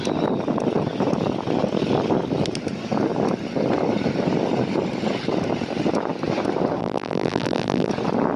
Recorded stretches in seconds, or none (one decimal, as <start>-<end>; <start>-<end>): 0.0-6.8; 7.9-8.4